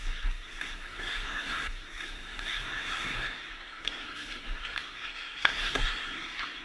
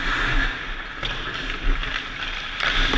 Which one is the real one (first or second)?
second